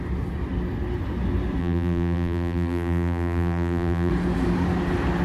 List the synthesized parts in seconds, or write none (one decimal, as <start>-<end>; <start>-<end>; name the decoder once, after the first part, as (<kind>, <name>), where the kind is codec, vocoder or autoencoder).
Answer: 1.6-4.1 (vocoder, BigVGAN v2)